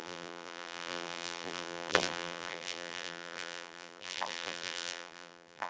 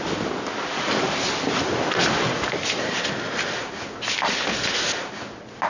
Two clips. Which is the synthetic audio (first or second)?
first